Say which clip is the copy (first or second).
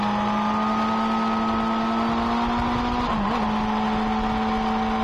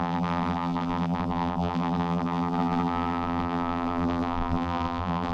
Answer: second